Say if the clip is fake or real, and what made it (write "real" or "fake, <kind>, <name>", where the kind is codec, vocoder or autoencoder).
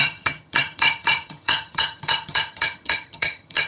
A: fake, vocoder, HiFi-GAN